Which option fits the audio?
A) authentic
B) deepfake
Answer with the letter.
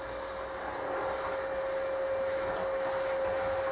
A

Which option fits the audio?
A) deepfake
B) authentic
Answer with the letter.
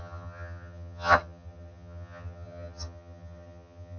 A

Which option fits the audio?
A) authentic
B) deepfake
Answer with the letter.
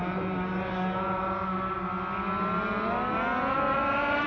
A